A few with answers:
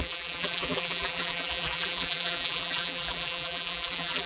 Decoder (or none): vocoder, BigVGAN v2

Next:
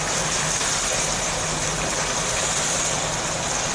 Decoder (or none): none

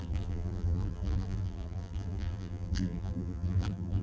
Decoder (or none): vocoder, BigVGAN v2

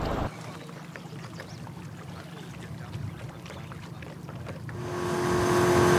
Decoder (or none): none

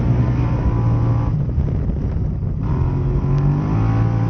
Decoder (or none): none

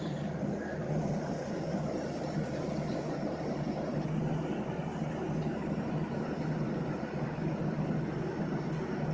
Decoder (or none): none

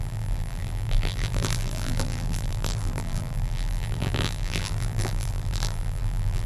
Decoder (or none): vocoder, BigVGAN v2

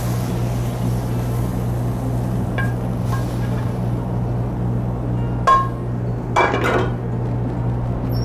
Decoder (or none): none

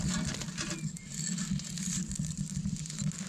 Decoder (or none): none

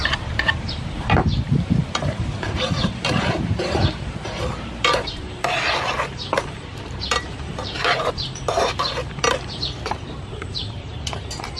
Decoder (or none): vocoder, BigVGAN v2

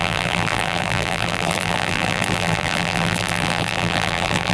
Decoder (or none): vocoder, BigVGAN v2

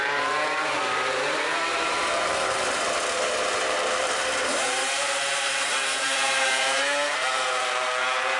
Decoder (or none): vocoder, BigVGAN v2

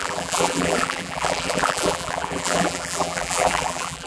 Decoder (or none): vocoder, BigVGAN v2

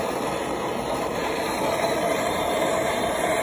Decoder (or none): vocoder, BigVGAN v2